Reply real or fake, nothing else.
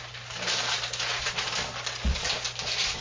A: real